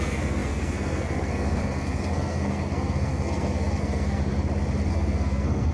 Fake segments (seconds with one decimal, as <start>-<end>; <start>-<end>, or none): 0.0-4.2; 4.9-5.7